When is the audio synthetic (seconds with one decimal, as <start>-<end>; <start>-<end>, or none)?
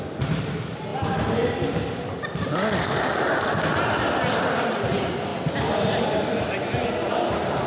none